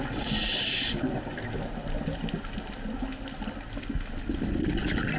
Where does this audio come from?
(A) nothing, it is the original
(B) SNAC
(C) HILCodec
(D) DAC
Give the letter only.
A